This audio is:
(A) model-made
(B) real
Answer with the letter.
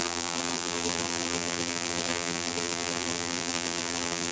A